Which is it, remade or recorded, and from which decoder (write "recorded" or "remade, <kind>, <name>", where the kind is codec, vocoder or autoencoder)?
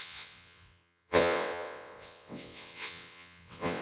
remade, vocoder, WaveNeXt